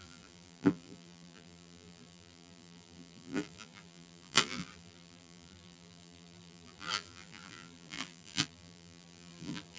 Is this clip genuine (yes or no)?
no